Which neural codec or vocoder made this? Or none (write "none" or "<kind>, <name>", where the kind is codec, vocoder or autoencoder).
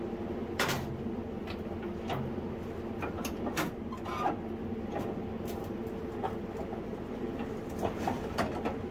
none